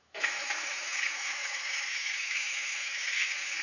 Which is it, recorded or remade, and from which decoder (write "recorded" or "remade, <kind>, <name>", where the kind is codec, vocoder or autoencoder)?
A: remade, autoencoder, DAC-VAE